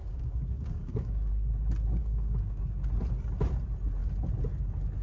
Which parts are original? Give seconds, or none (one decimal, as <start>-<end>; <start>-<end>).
1.3-2.0; 2.6-5.0